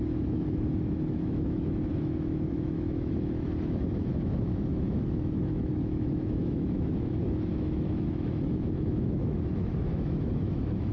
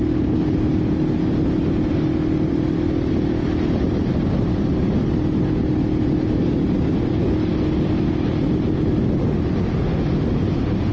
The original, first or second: second